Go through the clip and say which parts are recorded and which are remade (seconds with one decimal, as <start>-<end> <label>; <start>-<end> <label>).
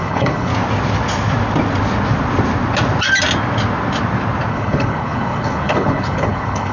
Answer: 0.0-0.5 remade; 0.5-4.5 recorded; 4.5-6.7 remade